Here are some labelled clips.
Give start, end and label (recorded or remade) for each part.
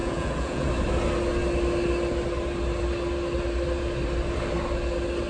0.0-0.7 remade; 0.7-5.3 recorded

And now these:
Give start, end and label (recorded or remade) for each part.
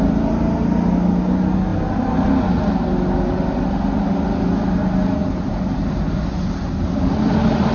0.0-7.7 recorded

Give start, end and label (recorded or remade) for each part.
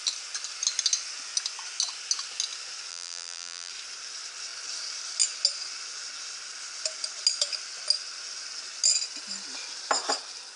0.0-2.9 recorded; 2.9-3.7 remade; 3.7-10.6 recorded